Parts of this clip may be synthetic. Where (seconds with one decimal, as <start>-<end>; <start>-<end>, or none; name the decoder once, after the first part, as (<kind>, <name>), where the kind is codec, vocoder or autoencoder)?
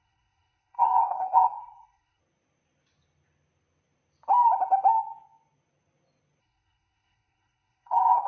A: 0.0-2.2 (codec, SNAC); 6.4-8.3